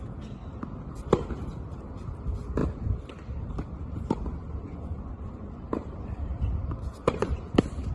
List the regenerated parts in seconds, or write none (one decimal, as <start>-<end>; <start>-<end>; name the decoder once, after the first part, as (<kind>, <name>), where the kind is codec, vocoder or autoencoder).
4.4-5.6 (vocoder, Vocos); 7.0-7.5